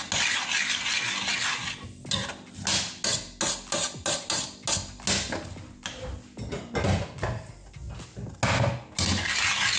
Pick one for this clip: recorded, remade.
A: recorded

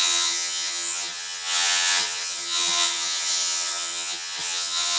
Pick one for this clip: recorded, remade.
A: remade